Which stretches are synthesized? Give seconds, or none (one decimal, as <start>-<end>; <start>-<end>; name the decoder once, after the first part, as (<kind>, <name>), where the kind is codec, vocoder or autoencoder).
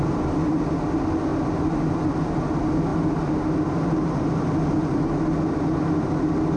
none